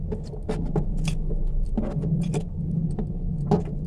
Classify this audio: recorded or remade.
recorded